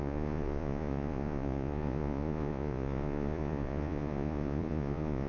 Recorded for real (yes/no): no